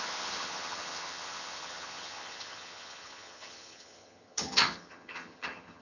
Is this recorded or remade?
remade